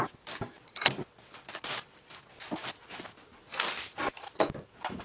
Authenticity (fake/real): real